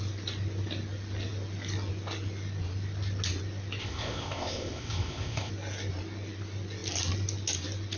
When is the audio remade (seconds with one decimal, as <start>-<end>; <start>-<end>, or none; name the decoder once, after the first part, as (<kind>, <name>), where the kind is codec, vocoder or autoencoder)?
3.8-5.5 (codec, ZipCodec)